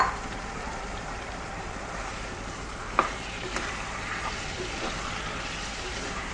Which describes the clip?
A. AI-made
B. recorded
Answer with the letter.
A